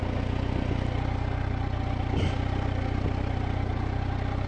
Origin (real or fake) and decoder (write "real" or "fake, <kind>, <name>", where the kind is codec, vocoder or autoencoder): real